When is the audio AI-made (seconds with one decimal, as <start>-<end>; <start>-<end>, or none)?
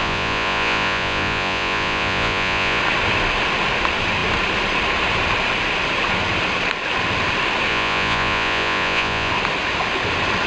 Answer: 0.0-2.8; 7.7-9.3